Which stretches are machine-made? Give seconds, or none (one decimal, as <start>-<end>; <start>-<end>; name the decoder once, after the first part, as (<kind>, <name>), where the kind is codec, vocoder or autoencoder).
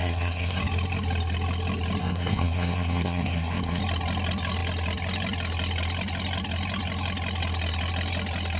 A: 0.0-0.6 (codec, SNAC); 2.0-3.8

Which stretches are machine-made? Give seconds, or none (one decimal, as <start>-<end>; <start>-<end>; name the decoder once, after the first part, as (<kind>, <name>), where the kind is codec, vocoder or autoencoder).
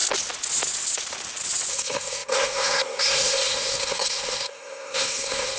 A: 1.7-5.6 (codec, SNAC)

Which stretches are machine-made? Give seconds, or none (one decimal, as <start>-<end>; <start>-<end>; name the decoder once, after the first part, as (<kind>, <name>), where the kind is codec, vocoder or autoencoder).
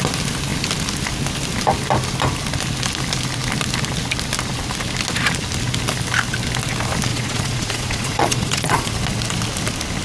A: 7.1-8.9 (vocoder, Vocos)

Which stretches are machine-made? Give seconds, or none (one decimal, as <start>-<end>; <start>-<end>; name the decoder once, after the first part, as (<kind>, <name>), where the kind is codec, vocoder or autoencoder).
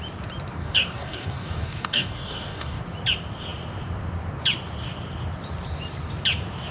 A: 0.6-2.8 (codec, DAC)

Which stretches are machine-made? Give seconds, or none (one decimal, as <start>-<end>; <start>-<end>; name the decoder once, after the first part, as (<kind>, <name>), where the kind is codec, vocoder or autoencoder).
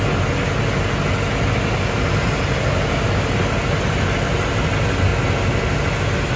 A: none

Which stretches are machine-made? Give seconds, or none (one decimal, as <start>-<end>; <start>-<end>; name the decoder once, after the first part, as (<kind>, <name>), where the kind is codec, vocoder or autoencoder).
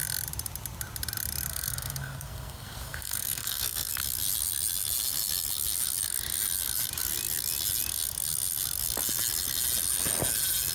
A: 1.5-3.9 (codec, SNAC)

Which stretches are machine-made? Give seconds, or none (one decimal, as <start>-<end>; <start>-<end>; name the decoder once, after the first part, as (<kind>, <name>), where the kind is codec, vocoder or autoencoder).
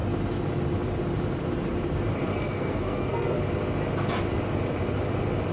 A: 2.3-3.4 (codec, SNAC)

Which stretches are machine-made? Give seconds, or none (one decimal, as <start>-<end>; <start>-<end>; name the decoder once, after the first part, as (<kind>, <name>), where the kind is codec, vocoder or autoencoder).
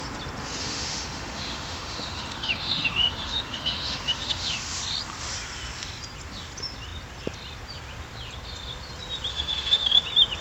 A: 0.6-4.8 (autoencoder, DAC-VAE); 9.3-10.0